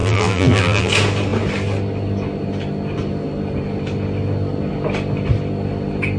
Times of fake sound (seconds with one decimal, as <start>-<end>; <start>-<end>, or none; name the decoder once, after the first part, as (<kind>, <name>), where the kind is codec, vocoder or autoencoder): 0.0-0.9 (vocoder, BigVGAN v2)